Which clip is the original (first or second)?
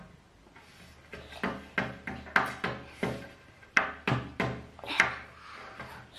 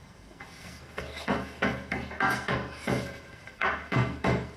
first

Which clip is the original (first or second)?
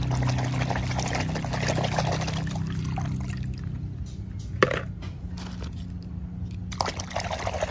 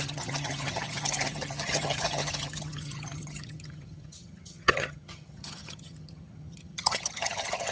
first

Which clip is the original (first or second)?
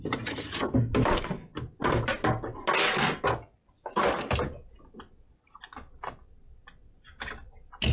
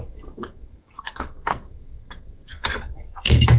first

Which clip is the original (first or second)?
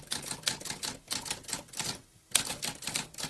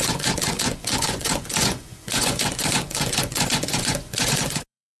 first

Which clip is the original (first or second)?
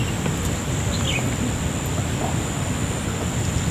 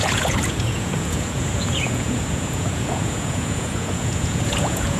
first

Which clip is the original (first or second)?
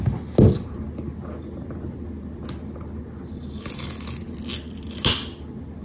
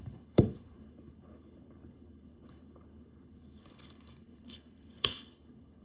first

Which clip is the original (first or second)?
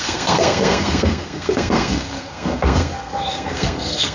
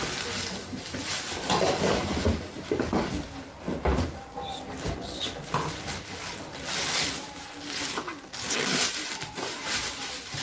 second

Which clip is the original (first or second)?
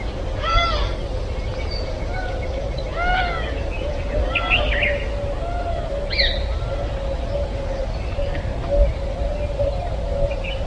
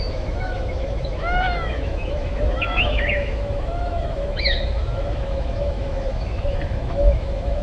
first